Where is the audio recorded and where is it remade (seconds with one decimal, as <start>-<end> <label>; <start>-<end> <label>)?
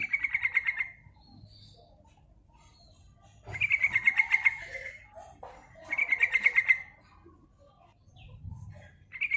0.0-9.4 recorded